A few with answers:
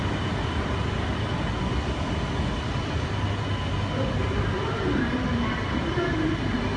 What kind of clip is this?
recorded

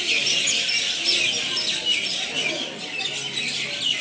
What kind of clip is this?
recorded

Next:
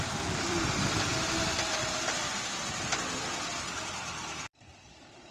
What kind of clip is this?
remade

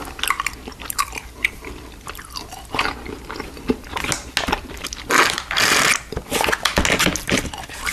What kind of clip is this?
recorded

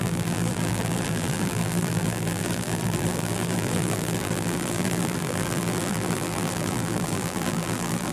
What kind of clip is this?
remade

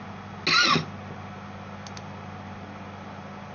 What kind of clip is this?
recorded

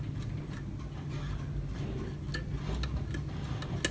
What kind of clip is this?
recorded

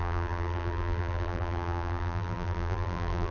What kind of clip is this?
remade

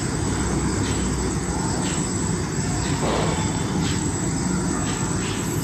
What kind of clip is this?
recorded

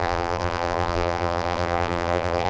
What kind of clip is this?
remade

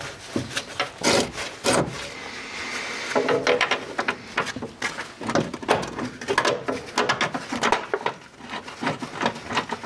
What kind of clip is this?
recorded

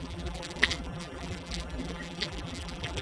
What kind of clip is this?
remade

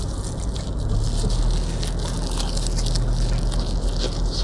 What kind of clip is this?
recorded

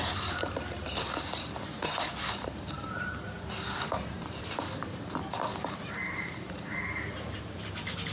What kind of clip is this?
remade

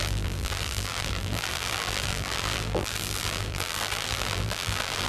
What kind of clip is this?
remade